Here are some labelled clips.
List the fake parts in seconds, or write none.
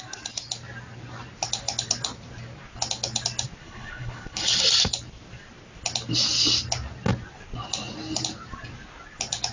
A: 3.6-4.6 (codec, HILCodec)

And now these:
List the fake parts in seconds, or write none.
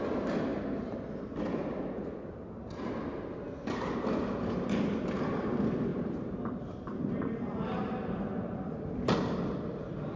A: 0.5-1.0 (vocoder, BigVGAN v2); 5.9-7.1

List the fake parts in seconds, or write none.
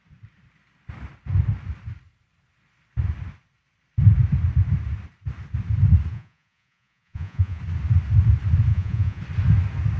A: 6.1-7.6 (vocoder, Vocos); 8.7-9.2